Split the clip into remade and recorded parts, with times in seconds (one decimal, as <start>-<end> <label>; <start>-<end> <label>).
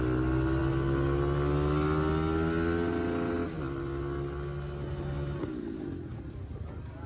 0.0-7.1 recorded